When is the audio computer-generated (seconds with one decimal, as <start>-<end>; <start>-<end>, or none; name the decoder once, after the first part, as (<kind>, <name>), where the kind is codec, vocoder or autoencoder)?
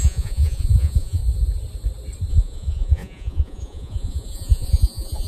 0.0-1.2 (vocoder, Vocos); 2.3-5.3